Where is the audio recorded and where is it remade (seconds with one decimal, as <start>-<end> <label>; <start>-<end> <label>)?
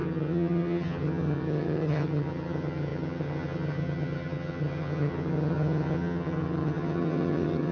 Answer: 0.0-7.7 remade